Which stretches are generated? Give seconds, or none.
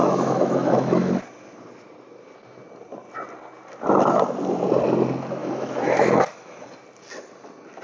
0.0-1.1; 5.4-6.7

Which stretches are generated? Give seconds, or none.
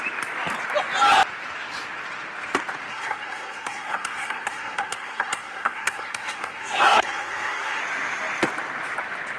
2.9-7.8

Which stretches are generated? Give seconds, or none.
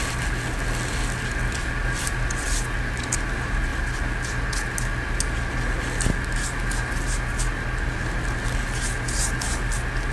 none